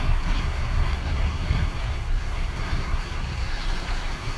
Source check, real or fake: fake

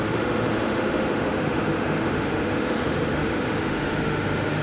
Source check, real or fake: fake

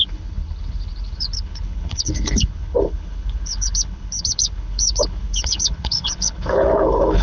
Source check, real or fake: fake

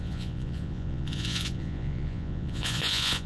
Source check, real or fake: fake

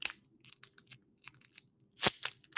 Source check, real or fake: real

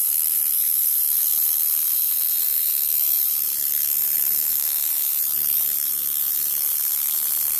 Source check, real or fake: fake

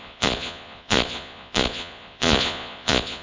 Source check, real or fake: fake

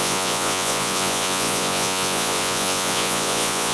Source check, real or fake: fake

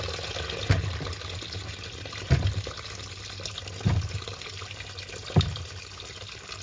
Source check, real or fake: real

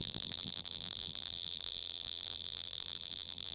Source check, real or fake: fake